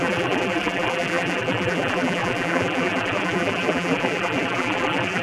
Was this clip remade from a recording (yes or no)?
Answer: yes